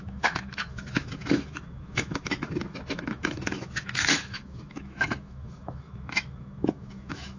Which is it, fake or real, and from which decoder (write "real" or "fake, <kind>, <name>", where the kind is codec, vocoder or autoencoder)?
fake, autoencoder, DAC-VAE